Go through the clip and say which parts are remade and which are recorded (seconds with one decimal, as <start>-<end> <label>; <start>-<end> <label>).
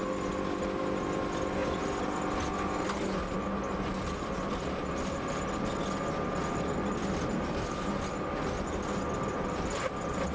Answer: 0.0-10.3 recorded